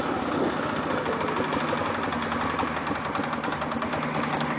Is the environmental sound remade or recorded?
recorded